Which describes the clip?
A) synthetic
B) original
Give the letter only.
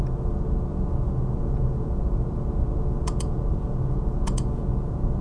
A